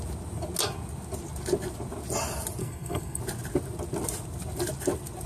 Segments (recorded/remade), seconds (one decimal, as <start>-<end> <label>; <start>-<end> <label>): 0.0-2.6 recorded; 2.6-3.2 remade; 3.2-5.3 recorded